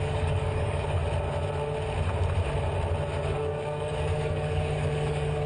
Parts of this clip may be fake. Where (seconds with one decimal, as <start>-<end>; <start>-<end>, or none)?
0.0-1.0; 3.3-5.5